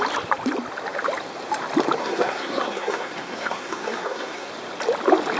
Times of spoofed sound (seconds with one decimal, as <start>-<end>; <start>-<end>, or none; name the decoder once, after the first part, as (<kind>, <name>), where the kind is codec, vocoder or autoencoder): 2.0-4.5 (codec, SNAC)